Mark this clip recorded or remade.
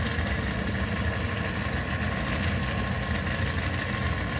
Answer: recorded